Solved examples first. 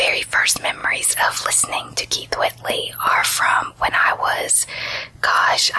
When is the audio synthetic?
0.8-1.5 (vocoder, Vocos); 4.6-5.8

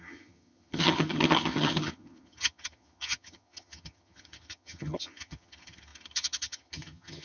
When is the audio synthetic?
0.0-7.2 (vocoder, HiFi-GAN)

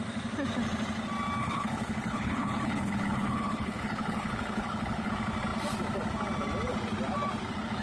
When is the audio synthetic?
1.4-5.1 (codec, HILCodec)